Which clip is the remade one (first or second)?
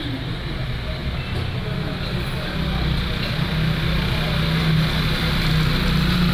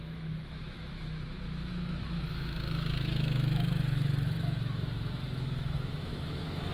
second